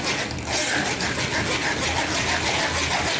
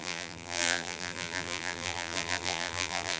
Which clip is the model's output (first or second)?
second